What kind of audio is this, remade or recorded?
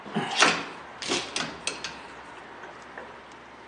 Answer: recorded